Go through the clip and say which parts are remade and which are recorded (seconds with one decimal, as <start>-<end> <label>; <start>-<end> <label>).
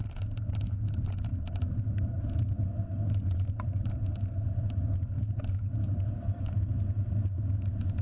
0.0-8.0 recorded